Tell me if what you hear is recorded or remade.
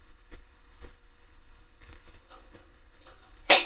remade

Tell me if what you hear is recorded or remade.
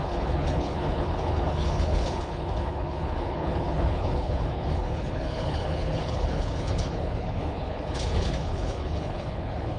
remade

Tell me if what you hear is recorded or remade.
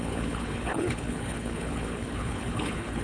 remade